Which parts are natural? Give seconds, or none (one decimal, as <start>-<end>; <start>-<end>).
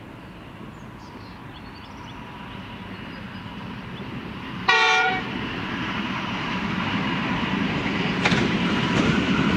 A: 0.0-1.4; 1.9-4.2; 9.2-9.6